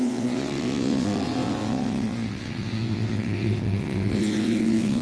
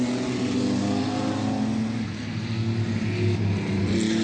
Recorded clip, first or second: second